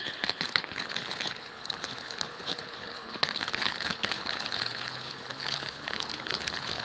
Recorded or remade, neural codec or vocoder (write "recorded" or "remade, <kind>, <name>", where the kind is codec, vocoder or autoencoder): remade, codec, HILCodec